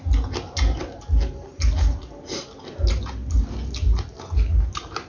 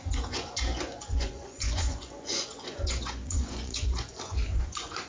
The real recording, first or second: first